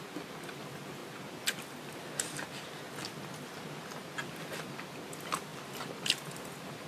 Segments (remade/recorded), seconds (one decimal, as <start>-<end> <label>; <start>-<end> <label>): 0.0-6.9 recorded